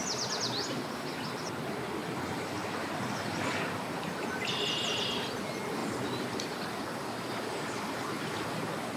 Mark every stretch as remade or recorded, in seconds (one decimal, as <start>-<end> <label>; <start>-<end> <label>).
0.0-9.0 recorded